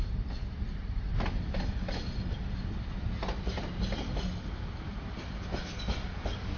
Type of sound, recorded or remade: recorded